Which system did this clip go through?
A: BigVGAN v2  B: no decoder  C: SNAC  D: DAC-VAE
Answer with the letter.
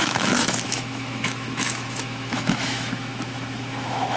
D